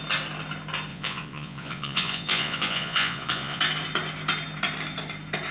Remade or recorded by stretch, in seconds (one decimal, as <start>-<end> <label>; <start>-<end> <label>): 0.0-0.9 recorded; 0.9-3.6 remade; 3.6-5.5 recorded